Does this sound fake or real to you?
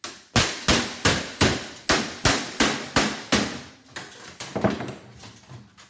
real